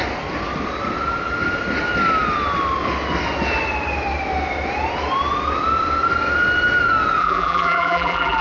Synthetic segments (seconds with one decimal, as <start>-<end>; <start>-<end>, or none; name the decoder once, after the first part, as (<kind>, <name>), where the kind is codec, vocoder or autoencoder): 7.2-8.4 (vocoder, BigVGAN v2)